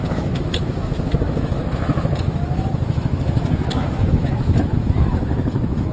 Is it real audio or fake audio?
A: fake